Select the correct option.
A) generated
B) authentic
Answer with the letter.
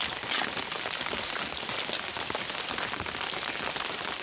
B